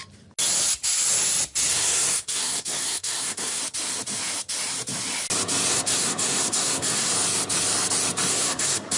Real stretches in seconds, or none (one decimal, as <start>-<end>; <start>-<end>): 0.0-1.7; 3.6-5.7; 7.1-8.3